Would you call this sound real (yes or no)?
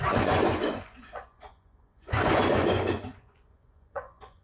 no